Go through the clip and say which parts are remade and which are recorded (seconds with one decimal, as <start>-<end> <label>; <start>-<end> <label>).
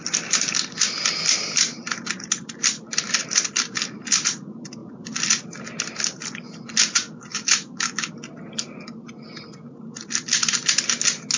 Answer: 0.0-7.3 recorded; 7.3-8.1 remade; 8.1-11.4 recorded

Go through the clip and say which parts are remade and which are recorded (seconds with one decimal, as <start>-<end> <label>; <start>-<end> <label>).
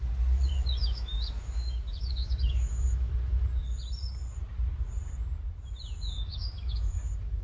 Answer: 0.0-0.8 recorded; 0.8-3.1 remade; 3.1-6.3 recorded; 6.3-7.0 remade; 7.0-7.4 recorded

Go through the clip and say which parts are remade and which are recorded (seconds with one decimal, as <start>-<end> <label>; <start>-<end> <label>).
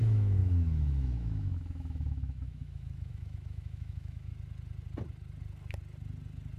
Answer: 0.0-4.3 remade; 4.3-6.6 recorded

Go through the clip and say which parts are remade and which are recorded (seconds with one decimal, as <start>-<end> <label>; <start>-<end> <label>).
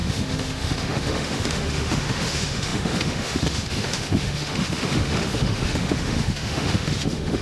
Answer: 0.0-7.4 remade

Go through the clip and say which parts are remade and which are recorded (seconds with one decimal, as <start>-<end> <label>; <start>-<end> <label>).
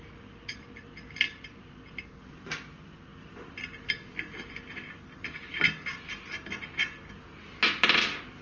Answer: 0.0-8.4 recorded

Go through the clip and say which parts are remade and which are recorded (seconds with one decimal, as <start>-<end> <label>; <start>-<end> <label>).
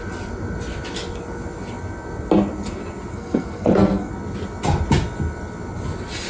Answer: 0.0-3.1 recorded; 3.1-4.1 remade; 4.1-6.3 recorded